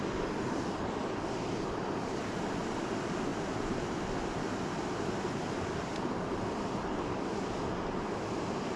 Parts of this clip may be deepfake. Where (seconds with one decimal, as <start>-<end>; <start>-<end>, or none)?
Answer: none